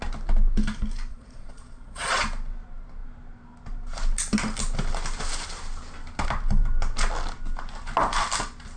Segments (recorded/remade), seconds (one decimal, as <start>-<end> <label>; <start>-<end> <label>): 0.0-1.1 recorded; 1.1-2.1 remade; 2.1-8.8 recorded